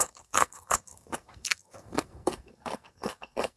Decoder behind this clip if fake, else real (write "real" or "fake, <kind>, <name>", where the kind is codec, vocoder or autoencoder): fake, codec, SNAC